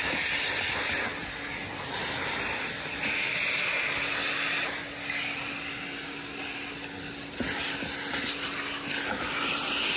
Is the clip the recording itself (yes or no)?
yes